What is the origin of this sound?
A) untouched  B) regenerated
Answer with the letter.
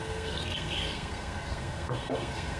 B